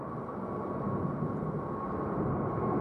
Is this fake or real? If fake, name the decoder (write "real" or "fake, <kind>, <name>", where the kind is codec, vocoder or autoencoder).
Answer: real